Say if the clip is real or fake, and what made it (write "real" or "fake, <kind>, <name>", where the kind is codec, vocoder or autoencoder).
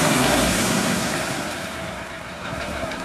fake, codec, SNAC